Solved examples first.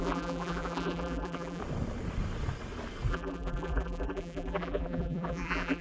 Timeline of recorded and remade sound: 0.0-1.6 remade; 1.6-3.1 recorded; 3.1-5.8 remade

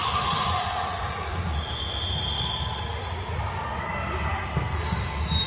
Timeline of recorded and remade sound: 0.0-1.7 remade; 1.7-2.9 recorded; 2.9-3.4 remade; 3.4-5.5 recorded

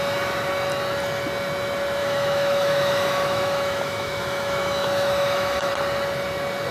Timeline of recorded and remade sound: 0.0-2.0 recorded; 2.0-5.7 remade; 5.7-6.7 recorded

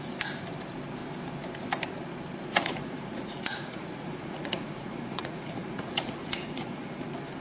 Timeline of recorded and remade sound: 0.0-2.5 recorded; 2.5-6.9 remade; 6.9-7.4 recorded

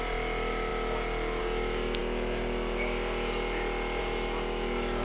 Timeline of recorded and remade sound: 0.0-5.0 recorded

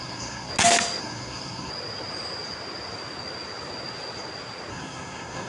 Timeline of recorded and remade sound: 0.0-0.5 remade; 0.5-1.0 recorded; 1.0-1.7 remade; 1.7-4.7 recorded; 4.7-5.5 remade